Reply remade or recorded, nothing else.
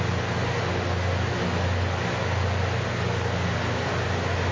recorded